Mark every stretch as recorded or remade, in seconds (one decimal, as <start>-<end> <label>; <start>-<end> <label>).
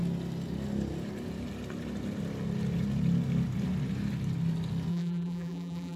0.0-4.9 recorded; 4.9-6.0 remade